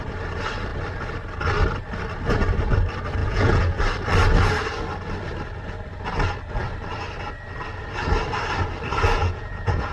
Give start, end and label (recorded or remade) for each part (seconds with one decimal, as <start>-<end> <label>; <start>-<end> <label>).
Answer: 0.0-3.2 recorded; 3.2-3.8 remade; 3.8-9.2 recorded; 9.2-9.9 remade